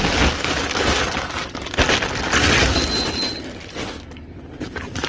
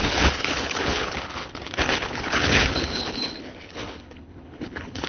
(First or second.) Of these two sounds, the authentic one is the first